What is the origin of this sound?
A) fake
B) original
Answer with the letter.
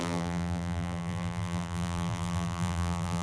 A